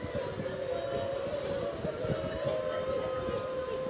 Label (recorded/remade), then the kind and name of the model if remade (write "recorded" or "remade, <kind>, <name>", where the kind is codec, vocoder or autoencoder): recorded